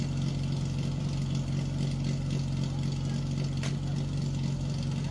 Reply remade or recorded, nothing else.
recorded